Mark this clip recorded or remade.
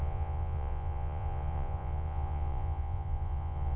remade